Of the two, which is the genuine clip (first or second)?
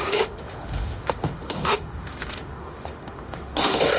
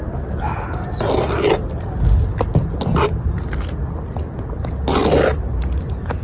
second